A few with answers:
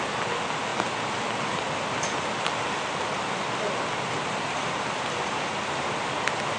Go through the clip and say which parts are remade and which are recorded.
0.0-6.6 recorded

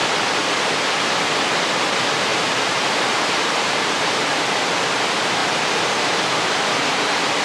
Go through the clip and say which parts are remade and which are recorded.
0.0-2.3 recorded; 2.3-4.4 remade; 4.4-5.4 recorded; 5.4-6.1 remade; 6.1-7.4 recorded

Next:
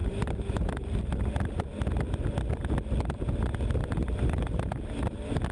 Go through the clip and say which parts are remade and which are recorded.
0.0-1.0 remade; 1.0-3.8 recorded; 3.8-5.0 remade; 5.0-5.5 recorded

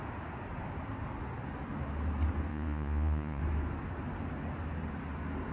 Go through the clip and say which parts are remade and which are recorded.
0.0-2.5 recorded; 2.5-3.4 remade; 3.4-5.5 recorded

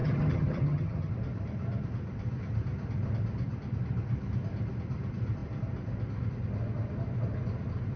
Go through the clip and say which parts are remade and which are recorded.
0.0-1.1 remade; 1.1-8.0 recorded

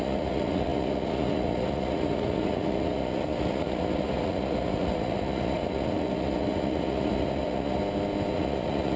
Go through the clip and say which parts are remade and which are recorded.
0.0-7.8 remade; 7.8-8.3 recorded; 8.3-9.0 remade

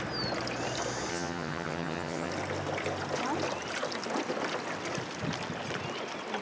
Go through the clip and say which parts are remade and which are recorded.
0.0-1.1 recorded; 1.1-2.3 remade; 2.3-6.4 recorded